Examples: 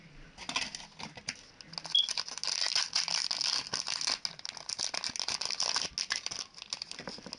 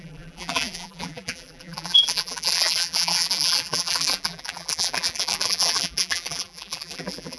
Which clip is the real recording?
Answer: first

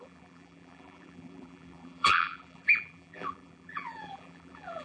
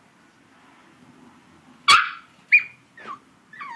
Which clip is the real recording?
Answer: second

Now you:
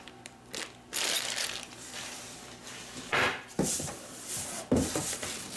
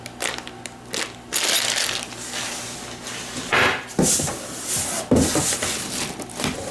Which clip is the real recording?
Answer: second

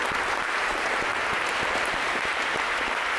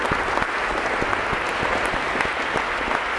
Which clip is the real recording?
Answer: second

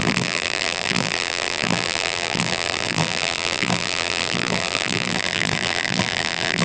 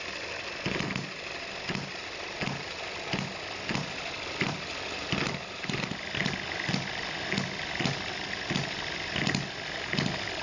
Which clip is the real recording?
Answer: second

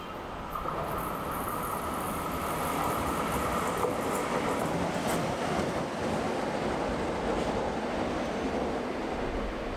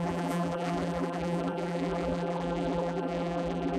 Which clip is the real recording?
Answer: first